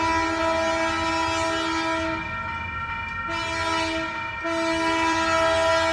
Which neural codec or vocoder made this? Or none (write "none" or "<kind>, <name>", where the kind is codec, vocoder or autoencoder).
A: none